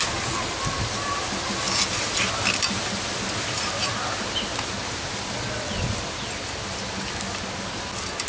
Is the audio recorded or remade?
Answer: recorded